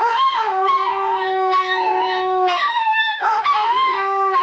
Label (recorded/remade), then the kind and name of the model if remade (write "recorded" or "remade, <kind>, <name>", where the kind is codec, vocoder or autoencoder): remade, autoencoder, DAC-VAE